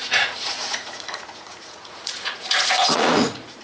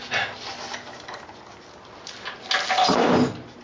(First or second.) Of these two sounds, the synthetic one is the first